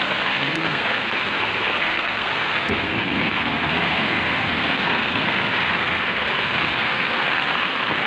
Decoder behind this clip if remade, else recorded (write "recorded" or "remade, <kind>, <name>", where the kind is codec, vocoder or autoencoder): remade, codec, SNAC